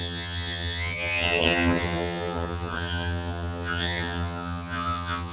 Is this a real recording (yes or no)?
no